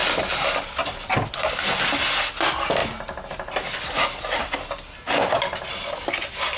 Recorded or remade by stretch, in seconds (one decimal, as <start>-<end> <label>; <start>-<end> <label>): 0.0-6.6 recorded